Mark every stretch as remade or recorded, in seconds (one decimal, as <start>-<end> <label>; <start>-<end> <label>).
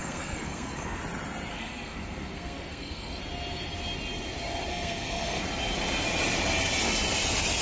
0.0-1.0 remade; 1.0-1.5 recorded; 1.5-3.2 remade; 3.2-4.7 recorded; 4.7-5.4 remade; 5.4-7.6 recorded